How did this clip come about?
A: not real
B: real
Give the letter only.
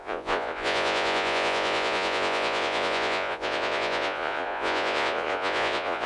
A